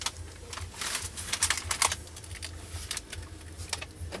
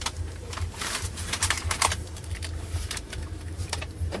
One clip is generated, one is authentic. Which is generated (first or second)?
second